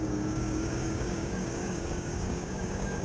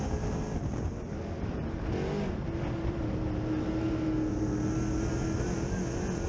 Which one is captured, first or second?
second